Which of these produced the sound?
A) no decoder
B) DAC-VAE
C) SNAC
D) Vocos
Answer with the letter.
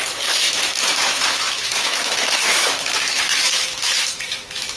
B